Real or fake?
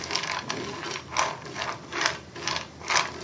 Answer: real